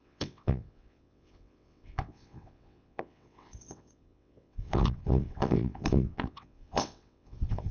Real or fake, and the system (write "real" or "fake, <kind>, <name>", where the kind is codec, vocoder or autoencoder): fake, vocoder, WaveNeXt